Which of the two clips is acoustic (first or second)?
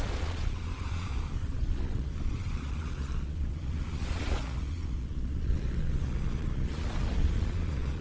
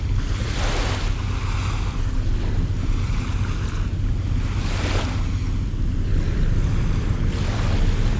second